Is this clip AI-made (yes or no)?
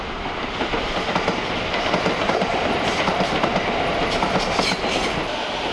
no